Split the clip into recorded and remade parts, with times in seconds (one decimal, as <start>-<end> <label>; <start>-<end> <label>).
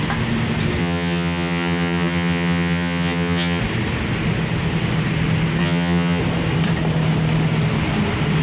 0.0-0.8 recorded; 0.8-3.6 remade; 3.6-5.6 recorded; 5.6-6.2 remade; 6.2-8.4 recorded